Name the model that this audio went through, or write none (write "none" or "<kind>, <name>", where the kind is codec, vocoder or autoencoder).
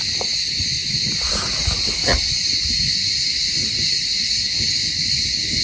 none